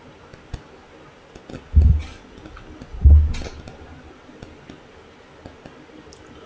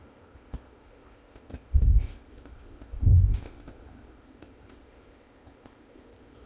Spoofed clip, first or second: second